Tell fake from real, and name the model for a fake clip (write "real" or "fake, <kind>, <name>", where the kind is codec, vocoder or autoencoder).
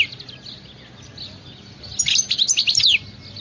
real